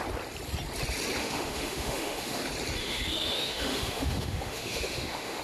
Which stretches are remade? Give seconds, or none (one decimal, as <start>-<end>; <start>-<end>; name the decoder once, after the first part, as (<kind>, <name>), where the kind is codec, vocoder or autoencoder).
1.2-2.4 (autoencoder, DAC-VAE); 2.8-5.4